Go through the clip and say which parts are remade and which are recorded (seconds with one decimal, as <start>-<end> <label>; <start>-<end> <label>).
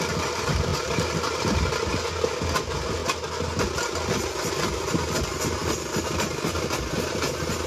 0.0-3.0 remade; 3.0-4.5 recorded; 4.5-7.7 remade